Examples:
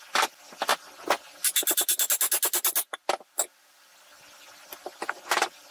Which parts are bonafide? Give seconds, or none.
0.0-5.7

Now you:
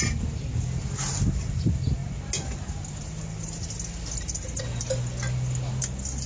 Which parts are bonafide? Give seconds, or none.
0.0-6.3